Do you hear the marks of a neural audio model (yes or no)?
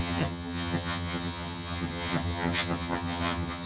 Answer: yes